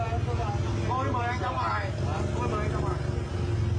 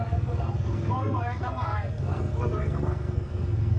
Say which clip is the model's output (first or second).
second